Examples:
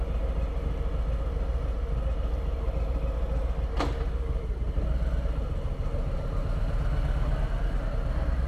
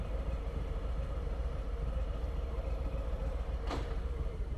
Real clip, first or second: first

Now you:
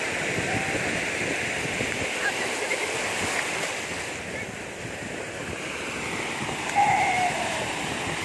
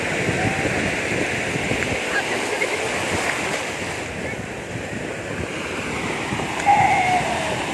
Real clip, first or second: second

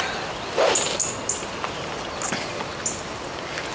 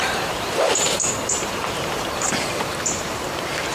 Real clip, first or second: first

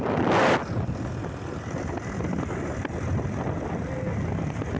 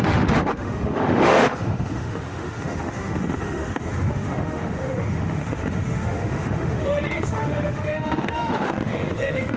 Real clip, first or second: first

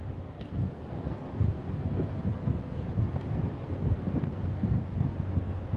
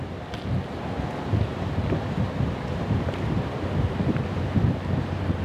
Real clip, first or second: second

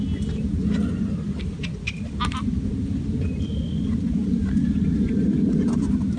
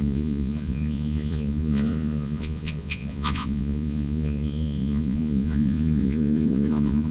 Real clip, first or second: first